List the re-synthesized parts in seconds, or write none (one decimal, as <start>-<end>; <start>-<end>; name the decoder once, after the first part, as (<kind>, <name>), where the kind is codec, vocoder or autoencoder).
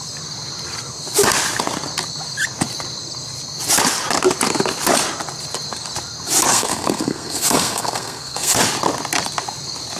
6.5-8.6 (codec, SNAC)